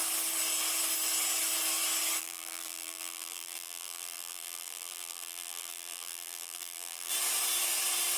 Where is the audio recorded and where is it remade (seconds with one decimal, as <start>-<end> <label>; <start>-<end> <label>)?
0.0-2.2 recorded; 2.2-7.1 remade; 7.1-8.2 recorded